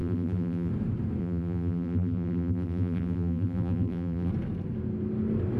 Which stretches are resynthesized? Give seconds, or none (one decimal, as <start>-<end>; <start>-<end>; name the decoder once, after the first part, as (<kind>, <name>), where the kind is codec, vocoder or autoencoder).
0.0-0.7 (vocoder, BigVGAN v2); 1.2-4.3